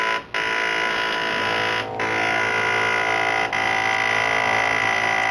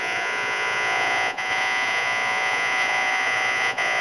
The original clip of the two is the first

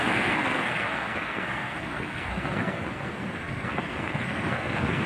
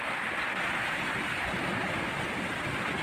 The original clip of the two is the second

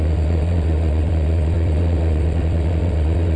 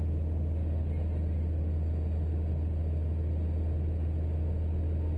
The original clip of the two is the second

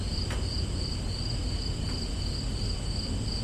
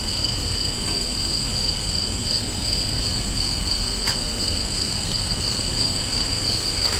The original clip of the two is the first